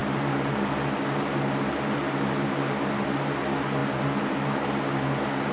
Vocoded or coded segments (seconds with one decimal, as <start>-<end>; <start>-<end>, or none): none